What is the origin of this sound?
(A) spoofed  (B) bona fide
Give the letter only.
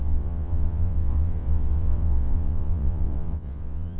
A